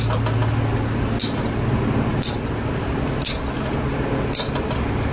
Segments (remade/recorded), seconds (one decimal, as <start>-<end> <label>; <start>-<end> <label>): 0.0-5.1 recorded